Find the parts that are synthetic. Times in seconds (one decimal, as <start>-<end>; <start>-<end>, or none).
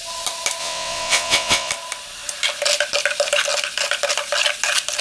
0.6-1.7